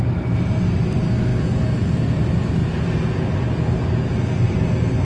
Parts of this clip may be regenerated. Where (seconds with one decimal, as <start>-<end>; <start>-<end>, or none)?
none